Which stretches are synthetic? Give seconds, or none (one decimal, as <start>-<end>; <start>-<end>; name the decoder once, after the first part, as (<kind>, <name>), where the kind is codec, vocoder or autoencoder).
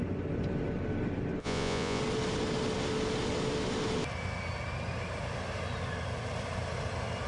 1.4-2.0 (vocoder, Vocos)